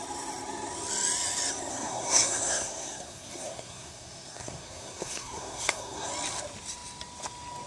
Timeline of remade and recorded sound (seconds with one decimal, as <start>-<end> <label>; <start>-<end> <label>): 0.0-1.7 recorded; 1.7-6.1 remade; 6.1-7.7 recorded